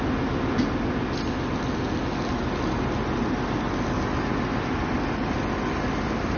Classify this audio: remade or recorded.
recorded